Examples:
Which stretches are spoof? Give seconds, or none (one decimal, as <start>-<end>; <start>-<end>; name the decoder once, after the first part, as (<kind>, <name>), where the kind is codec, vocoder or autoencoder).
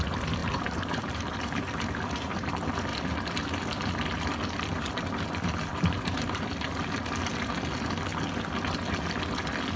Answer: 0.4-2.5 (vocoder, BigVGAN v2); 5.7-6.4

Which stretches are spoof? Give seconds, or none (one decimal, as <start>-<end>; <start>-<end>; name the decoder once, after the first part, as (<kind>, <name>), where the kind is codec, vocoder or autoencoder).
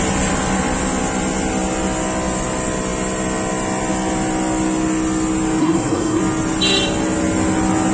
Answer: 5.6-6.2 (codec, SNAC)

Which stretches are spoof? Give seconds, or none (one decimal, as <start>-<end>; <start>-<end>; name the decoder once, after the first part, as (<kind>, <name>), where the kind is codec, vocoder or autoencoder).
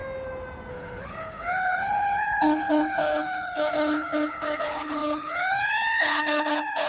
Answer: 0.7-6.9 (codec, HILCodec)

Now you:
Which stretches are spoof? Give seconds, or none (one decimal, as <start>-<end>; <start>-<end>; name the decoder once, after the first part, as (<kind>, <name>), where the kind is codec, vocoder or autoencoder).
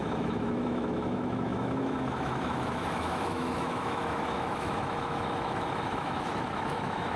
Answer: 0.0-7.2 (autoencoder, DAC-VAE)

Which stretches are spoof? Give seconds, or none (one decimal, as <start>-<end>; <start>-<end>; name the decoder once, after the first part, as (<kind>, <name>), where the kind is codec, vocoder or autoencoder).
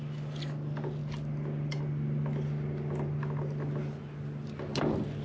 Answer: none